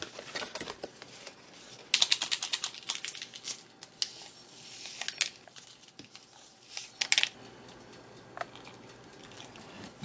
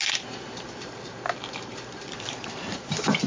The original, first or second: first